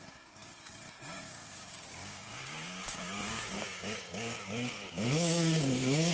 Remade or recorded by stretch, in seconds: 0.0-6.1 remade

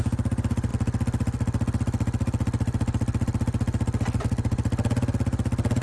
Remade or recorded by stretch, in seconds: 0.0-5.8 recorded

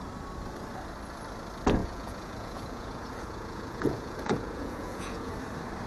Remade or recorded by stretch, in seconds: 0.0-1.8 recorded; 1.8-5.3 remade; 5.3-5.9 recorded

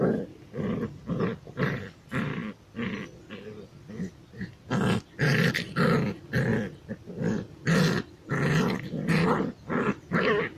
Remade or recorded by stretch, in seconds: 0.0-2.4 remade; 2.4-5.1 recorded; 5.1-6.5 remade; 6.5-9.4 recorded; 9.4-10.6 remade

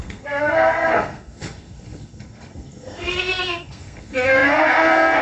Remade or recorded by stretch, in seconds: 0.0-5.2 remade

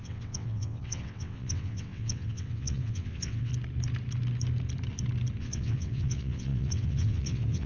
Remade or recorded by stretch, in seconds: 0.0-3.5 remade; 3.5-5.4 recorded; 5.4-7.7 remade